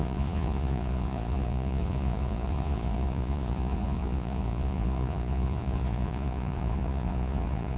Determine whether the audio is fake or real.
fake